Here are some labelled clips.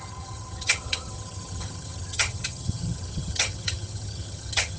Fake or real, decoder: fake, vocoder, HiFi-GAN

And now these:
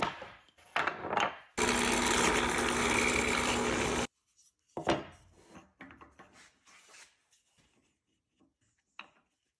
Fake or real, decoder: real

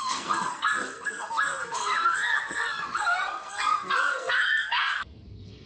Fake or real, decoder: fake, codec, SNAC